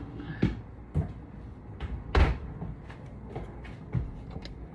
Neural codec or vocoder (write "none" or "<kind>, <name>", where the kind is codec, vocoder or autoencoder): none